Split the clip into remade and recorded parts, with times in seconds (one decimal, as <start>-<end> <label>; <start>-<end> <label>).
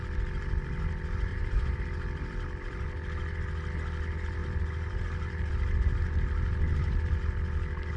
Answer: 0.0-1.3 recorded; 1.3-1.8 remade; 1.8-4.4 recorded; 4.4-5.5 remade; 5.5-8.0 recorded